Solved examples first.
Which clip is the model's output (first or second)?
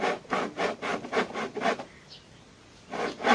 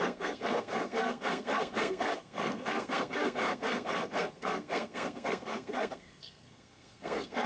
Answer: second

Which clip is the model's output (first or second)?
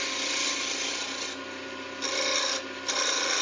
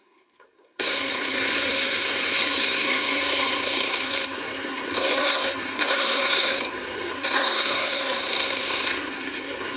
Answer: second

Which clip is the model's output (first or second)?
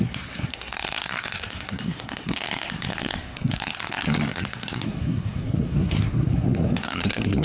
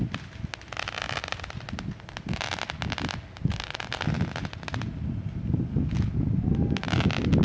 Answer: first